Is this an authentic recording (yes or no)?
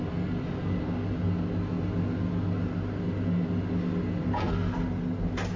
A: yes